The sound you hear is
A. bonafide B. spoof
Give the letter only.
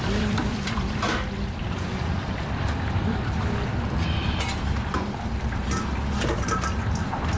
B